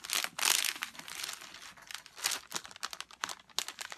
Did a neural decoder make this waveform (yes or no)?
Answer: no